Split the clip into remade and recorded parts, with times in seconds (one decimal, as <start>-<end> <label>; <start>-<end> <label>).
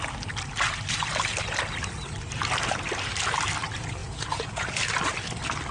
0.0-4.0 recorded; 4.0-4.7 remade; 4.7-5.7 recorded